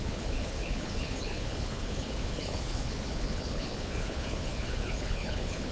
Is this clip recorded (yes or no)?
no